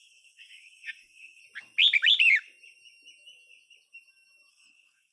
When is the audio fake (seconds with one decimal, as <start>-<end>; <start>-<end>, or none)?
0.0-1.4; 4.5-5.1